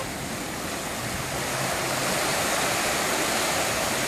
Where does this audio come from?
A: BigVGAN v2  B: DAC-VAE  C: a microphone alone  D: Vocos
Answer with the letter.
C